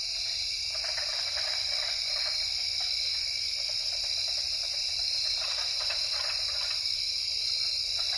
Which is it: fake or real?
real